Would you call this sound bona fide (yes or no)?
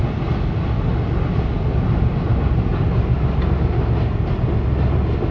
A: yes